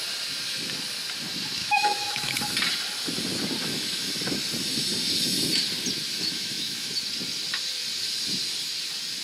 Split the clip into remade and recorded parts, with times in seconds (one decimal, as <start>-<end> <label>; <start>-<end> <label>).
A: 0.0-1.6 recorded; 1.6-2.4 remade; 2.4-3.6 recorded; 3.6-4.2 remade; 4.2-6.1 recorded; 6.1-6.9 remade; 6.9-9.2 recorded